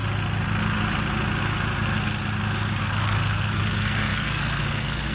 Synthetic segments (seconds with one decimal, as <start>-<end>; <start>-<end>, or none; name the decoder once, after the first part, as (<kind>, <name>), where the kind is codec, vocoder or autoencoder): 2.8-5.1 (codec, SNAC)